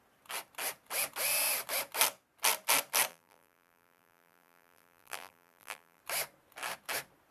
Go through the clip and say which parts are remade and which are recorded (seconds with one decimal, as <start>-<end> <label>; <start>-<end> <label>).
0.0-3.1 recorded; 3.1-6.0 remade; 6.0-7.3 recorded